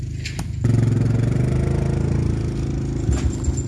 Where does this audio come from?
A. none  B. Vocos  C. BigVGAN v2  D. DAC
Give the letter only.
A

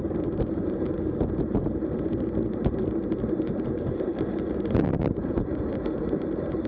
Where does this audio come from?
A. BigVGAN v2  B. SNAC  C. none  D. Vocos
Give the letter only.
A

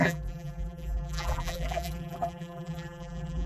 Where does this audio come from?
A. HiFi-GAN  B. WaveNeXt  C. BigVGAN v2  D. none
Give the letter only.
C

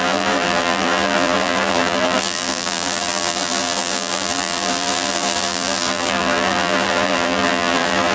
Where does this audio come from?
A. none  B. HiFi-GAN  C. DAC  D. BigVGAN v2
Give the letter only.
D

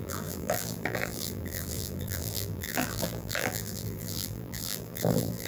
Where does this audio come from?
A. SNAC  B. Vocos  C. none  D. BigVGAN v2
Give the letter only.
D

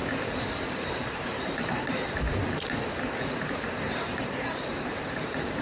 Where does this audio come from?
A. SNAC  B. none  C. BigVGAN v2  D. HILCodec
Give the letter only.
C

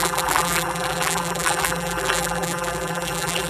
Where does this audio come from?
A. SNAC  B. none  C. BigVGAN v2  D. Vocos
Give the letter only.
C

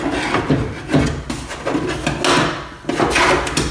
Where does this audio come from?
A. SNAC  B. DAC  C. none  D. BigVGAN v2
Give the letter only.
C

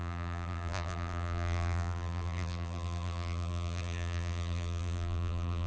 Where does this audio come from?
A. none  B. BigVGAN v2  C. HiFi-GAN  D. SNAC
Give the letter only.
B